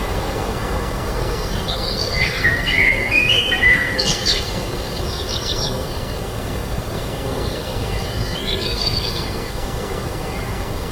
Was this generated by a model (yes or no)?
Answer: yes